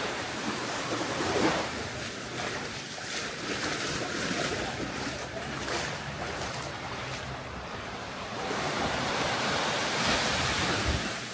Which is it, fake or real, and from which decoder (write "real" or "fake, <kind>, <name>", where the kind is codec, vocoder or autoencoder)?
fake, vocoder, BigVGAN v2